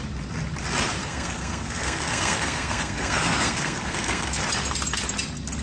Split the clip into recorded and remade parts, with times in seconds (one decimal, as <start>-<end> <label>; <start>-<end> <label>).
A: 0.0-1.0 recorded; 1.0-4.4 remade; 4.4-5.6 recorded